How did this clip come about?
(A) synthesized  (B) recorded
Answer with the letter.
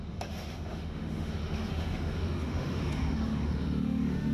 A